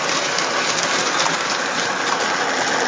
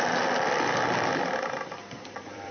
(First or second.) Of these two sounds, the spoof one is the second